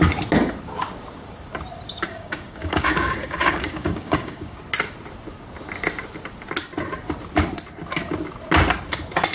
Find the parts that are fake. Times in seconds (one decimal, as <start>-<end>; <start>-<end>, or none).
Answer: 2.1-4.6